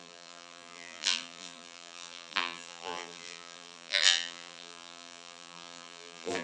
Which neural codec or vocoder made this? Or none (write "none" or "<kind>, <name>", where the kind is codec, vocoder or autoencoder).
vocoder, BigVGAN v2